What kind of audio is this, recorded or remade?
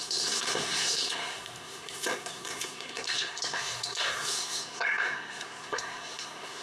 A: remade